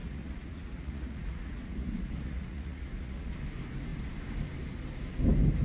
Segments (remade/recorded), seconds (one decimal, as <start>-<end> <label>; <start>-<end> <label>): 0.0-3.4 remade; 3.4-5.6 recorded